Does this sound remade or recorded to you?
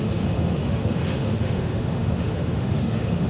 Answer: remade